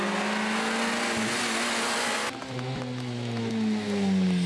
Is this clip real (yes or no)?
yes